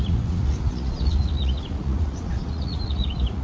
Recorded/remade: remade